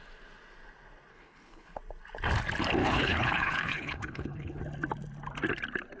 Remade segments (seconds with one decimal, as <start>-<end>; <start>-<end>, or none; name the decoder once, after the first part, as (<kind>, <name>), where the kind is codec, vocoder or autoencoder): 1.1-1.8 (codec, HILCodec); 2.8-4.6